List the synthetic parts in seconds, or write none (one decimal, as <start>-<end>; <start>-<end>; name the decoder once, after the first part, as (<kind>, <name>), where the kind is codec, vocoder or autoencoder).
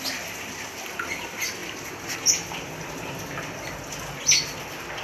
none